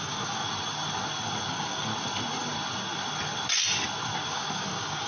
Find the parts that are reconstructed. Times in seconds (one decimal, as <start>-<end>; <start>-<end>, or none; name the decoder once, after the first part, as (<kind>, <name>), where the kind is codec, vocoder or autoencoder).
0.0-0.4 (codec, DAC); 1.5-1.9; 4.3-5.1